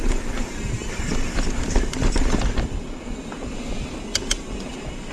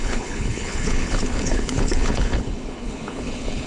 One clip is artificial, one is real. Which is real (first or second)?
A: first